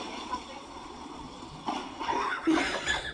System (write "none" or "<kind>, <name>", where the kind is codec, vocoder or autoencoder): vocoder, Vocos